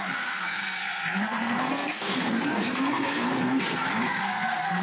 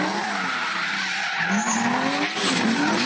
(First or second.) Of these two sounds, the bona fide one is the second